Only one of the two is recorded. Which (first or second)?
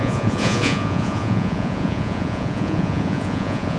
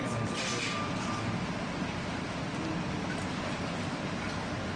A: second